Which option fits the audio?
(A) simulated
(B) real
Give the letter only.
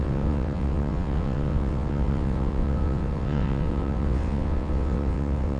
A